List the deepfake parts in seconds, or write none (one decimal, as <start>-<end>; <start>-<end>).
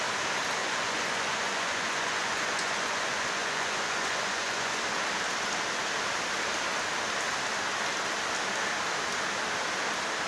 0.6-4.8